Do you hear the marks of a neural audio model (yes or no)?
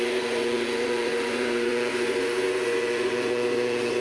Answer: yes